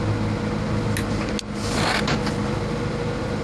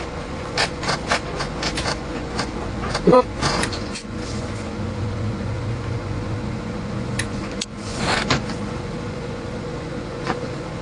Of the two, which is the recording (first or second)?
first